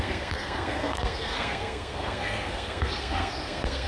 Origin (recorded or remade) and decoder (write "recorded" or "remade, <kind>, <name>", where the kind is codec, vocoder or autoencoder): remade, codec, SNAC